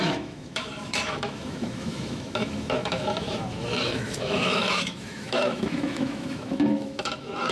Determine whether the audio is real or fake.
fake